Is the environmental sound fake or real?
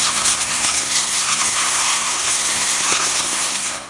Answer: fake